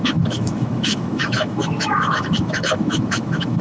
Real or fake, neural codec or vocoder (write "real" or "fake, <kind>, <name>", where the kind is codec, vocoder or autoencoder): fake, autoencoder, DAC-VAE